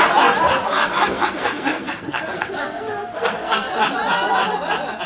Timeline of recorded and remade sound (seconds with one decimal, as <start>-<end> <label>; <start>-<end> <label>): 0.0-0.6 recorded; 0.6-3.7 remade; 3.7-5.1 recorded